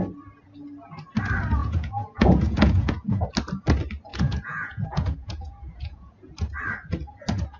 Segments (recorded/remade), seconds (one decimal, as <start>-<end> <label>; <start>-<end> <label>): 0.0-1.6 recorded; 1.6-3.3 remade; 3.3-4.1 recorded; 4.1-6.3 remade; 6.3-7.6 recorded